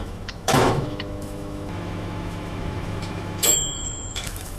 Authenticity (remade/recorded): remade